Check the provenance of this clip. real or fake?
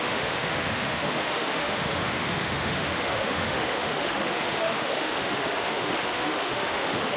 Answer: fake